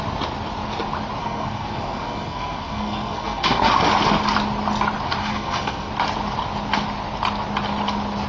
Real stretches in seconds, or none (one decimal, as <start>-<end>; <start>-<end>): 0.0-1.2; 3.7-5.2; 5.9-8.3